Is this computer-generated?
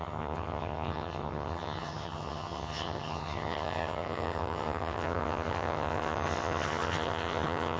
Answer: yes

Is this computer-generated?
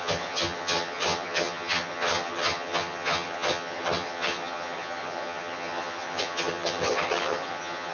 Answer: yes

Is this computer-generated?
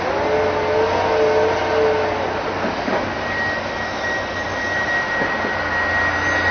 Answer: no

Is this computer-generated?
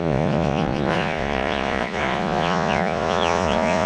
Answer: yes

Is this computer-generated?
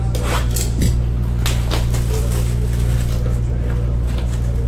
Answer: no